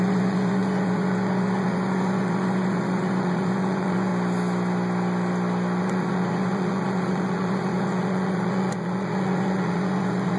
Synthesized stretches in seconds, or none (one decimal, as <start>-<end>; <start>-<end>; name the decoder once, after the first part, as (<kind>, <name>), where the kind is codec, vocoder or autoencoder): 0.0-4.1 (vocoder, Vocos); 5.8-10.4